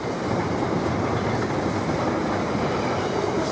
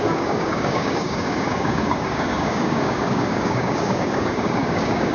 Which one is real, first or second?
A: first